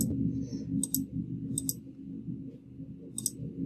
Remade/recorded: recorded